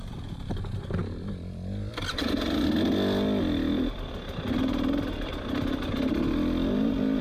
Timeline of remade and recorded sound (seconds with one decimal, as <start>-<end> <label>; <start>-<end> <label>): 0.0-7.2 recorded